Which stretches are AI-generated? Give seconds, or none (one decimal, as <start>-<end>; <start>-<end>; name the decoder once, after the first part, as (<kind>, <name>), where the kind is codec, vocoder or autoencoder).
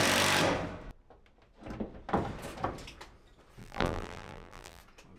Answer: 3.6-4.8 (vocoder, BigVGAN v2)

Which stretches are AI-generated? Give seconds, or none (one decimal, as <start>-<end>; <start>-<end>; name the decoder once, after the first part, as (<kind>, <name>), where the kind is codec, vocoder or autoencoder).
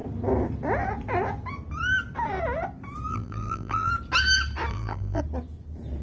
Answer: 3.1-3.9 (vocoder, BigVGAN v2); 4.7-5.2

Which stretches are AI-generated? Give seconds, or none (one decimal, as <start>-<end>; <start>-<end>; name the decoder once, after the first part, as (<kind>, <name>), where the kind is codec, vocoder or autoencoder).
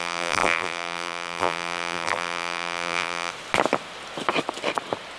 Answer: 0.0-3.3 (vocoder, BigVGAN v2)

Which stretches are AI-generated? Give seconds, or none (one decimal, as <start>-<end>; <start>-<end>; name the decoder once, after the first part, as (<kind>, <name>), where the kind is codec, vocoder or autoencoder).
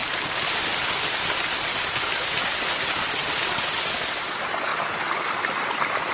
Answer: 0.7-1.7 (vocoder, BigVGAN v2); 3.6-4.7; 5.5-6.1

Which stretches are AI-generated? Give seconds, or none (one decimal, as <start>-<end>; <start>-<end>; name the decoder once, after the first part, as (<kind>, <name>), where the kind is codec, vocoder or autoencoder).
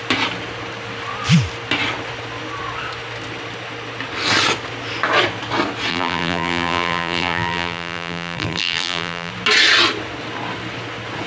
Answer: 5.9-9.3 (vocoder, BigVGAN v2)